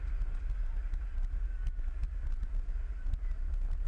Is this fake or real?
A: real